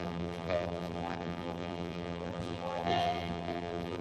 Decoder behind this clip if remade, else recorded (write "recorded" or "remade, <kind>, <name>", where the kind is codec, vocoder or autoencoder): remade, vocoder, BigVGAN v2